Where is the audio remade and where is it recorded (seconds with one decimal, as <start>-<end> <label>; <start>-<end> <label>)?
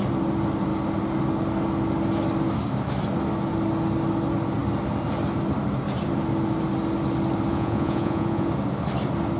0.0-7.5 recorded; 7.5-8.5 remade; 8.5-9.4 recorded